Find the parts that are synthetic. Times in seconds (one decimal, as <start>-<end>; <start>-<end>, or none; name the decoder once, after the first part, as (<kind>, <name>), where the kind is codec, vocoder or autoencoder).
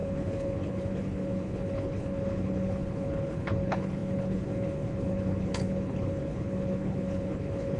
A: 0.0-7.8 (codec, HILCodec)